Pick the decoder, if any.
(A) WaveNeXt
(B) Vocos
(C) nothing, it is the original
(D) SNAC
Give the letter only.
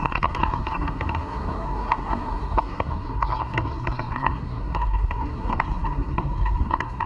D